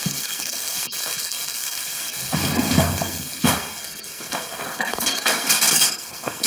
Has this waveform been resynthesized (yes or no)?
yes